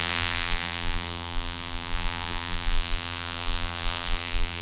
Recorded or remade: remade